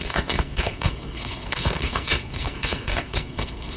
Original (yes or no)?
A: no